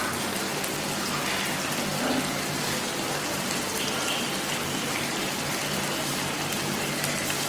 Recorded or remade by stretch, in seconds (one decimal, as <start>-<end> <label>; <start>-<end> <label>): 0.0-7.5 recorded